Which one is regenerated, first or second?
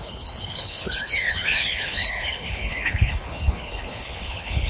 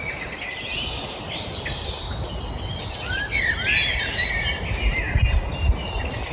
first